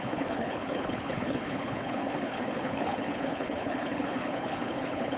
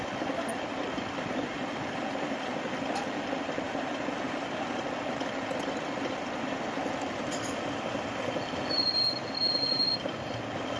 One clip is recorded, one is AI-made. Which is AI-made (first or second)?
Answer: first